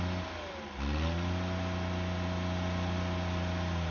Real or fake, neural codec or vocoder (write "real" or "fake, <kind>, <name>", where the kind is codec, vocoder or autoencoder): real